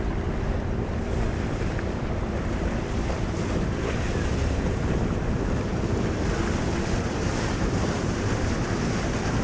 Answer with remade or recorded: remade